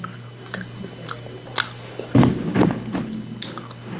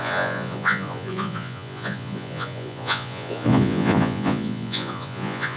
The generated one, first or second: second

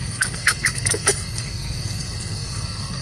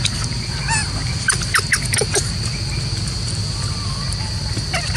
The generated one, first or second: first